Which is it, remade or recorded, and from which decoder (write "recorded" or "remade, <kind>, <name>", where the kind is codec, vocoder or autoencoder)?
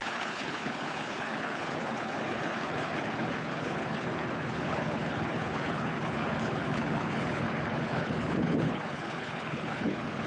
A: remade, codec, HILCodec